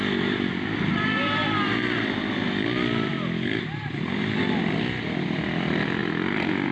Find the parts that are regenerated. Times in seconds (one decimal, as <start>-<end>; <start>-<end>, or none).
none